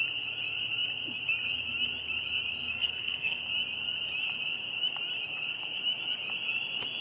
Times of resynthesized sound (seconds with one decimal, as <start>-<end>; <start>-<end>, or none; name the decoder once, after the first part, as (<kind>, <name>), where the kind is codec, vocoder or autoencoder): 2.7-3.4 (codec, SNAC)